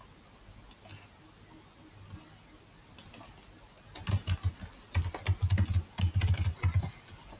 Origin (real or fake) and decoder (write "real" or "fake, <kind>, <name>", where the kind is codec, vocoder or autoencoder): real